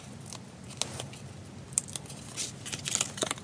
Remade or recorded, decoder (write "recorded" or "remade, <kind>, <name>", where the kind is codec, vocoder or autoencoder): recorded